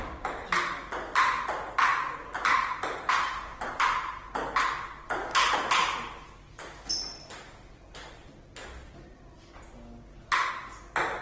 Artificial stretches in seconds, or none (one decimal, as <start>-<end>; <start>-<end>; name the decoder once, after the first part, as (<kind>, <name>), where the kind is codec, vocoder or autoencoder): none